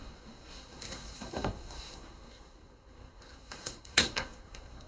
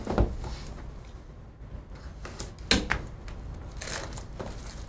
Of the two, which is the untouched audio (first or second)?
second